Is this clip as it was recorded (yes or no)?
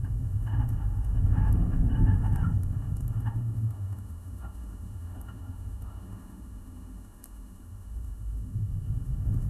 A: no